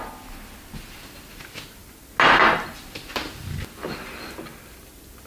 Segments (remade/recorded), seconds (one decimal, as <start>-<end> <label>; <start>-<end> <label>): 0.0-5.3 recorded

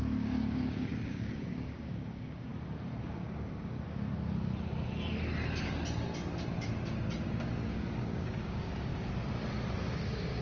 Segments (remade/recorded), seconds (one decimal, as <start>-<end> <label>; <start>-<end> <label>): 0.0-2.5 remade; 2.5-3.0 recorded; 3.0-4.1 remade; 4.1-7.4 recorded; 7.4-8.9 remade; 8.9-9.8 recorded; 9.8-10.4 remade

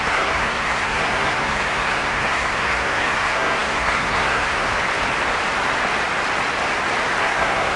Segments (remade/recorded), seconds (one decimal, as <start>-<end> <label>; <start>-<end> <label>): 0.0-4.7 remade; 4.7-7.2 recorded; 7.2-7.8 remade

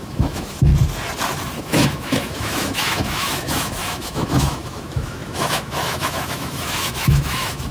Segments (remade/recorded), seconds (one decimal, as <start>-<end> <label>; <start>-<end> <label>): 0.0-0.7 remade; 0.7-1.6 recorded; 1.6-7.7 remade

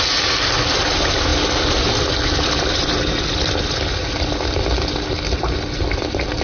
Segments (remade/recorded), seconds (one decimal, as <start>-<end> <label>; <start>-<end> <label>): 0.0-6.4 recorded

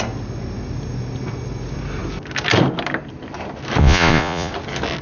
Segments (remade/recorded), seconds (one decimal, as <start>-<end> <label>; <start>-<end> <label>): 0.0-3.8 recorded; 3.8-4.5 remade; 4.5-5.0 recorded

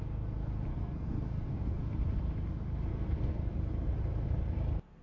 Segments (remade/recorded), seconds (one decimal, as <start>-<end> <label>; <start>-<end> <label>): 0.0-0.7 recorded; 0.7-1.8 remade; 1.8-2.9 recorded; 2.9-3.5 remade; 3.5-5.0 recorded